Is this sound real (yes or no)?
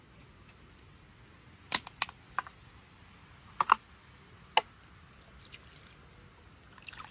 yes